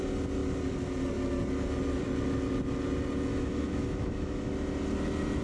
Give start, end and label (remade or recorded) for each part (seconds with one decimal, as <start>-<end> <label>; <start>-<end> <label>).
0.0-3.3 recorded; 3.3-4.5 remade; 4.5-5.4 recorded